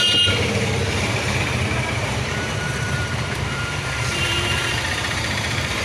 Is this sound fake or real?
fake